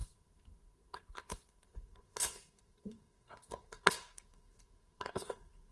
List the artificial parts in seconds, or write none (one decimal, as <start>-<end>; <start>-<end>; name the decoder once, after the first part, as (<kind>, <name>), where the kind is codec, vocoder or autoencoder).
0.0-5.7 (codec, SNAC)